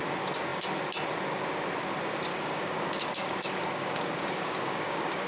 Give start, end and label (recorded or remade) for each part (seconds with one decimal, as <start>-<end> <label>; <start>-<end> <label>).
0.0-2.3 recorded; 2.3-5.3 remade